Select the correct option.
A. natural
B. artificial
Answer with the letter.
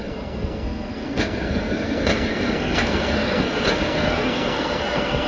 B